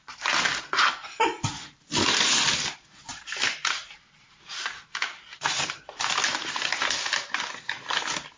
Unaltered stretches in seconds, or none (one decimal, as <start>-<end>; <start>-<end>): 0.0-1.0; 1.9-3.1; 5.6-8.4